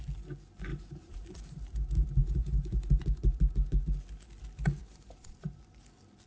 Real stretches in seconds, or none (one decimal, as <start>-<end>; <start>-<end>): 0.0-0.7; 1.8-2.2; 3.0-4.8; 5.6-6.3